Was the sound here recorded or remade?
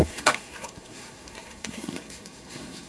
remade